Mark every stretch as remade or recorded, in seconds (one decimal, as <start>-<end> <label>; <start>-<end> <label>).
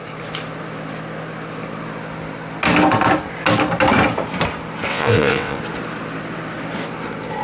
0.0-4.9 recorded; 4.9-5.6 remade; 5.6-7.4 recorded